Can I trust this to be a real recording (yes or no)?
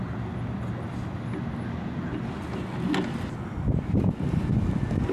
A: yes